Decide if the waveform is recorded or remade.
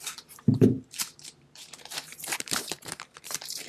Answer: remade